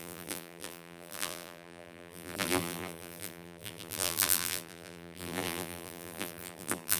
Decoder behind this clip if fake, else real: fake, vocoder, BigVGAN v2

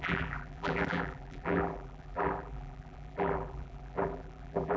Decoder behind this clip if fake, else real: fake, vocoder, BigVGAN v2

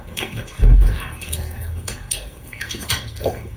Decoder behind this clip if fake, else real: fake, codec, SNAC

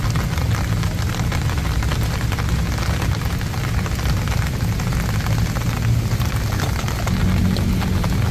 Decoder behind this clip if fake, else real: real